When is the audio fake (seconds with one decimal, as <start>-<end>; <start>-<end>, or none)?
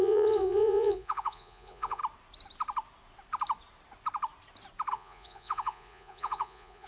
0.0-2.0; 4.9-6.9